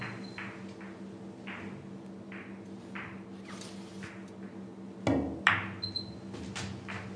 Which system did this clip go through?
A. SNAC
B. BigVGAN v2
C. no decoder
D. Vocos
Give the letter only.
C